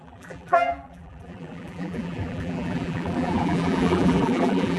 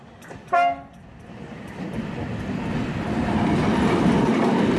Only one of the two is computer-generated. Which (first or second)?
first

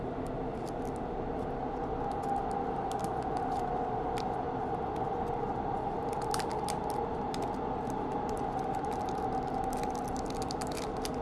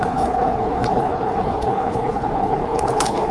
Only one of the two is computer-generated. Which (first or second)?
second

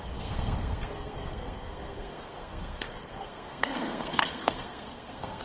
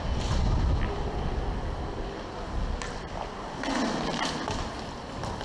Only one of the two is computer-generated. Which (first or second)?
first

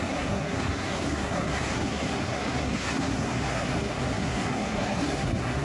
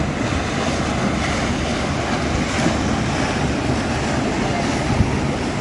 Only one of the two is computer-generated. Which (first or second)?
first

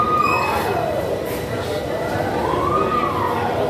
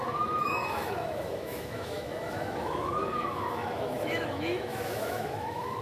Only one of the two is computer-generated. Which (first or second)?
second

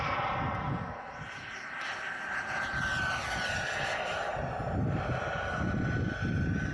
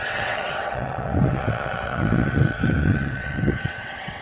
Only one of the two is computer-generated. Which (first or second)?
second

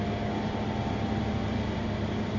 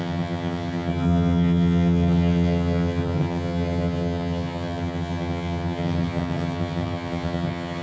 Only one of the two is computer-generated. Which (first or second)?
second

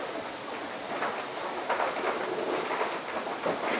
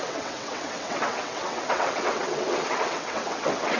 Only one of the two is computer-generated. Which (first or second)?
second